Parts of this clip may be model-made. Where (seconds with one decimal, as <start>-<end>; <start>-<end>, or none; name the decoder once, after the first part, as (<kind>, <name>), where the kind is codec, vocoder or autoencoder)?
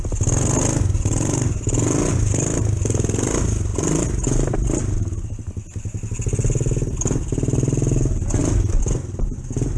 none